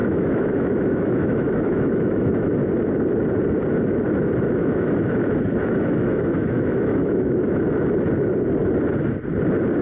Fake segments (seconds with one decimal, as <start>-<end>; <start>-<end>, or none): 0.0-2.7; 4.6-7.7